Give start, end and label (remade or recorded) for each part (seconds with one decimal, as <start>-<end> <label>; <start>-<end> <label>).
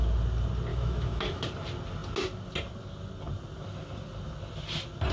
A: 0.0-0.7 recorded; 0.7-1.4 remade; 1.4-5.1 recorded